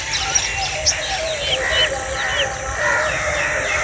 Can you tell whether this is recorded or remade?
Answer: recorded